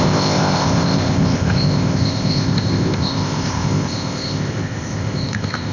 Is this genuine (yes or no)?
no